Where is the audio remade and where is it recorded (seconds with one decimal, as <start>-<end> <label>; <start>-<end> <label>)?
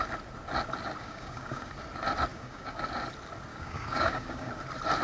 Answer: 0.0-1.0 recorded; 1.0-1.7 remade; 1.7-2.3 recorded; 2.3-2.8 remade; 2.8-3.5 recorded; 3.5-4.5 remade; 4.5-5.0 recorded